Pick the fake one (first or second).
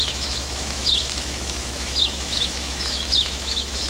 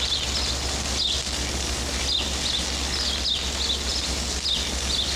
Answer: first